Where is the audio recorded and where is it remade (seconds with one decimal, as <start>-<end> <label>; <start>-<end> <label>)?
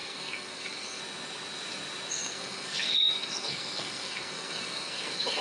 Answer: 0.0-1.0 remade; 1.0-2.1 recorded; 2.1-5.4 remade